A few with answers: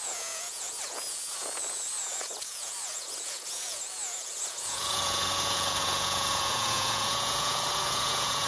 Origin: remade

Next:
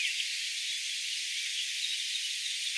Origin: recorded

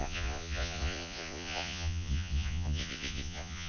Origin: remade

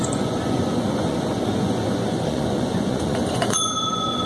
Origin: remade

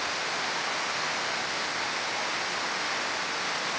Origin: recorded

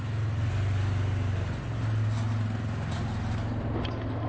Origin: recorded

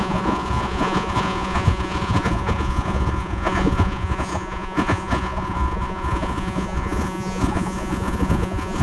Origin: remade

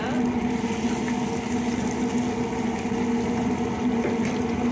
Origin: recorded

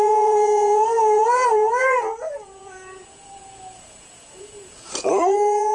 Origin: remade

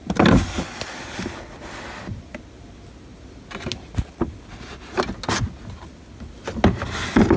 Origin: recorded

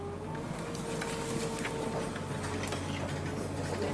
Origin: recorded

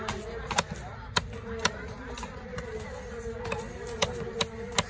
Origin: recorded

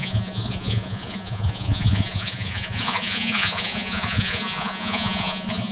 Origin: remade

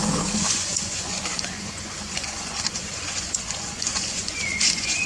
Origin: remade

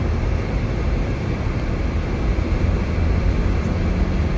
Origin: recorded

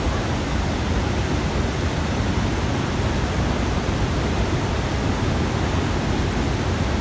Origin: recorded